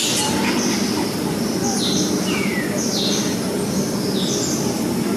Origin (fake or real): real